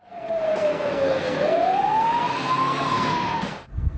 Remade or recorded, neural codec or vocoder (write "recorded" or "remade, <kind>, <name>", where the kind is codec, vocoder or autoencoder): remade, codec, SNAC